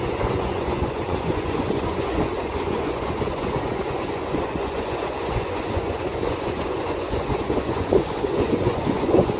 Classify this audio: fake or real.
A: fake